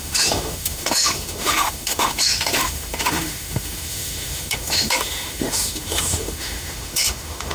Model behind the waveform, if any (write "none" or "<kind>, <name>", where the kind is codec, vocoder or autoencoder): autoencoder, DAC-VAE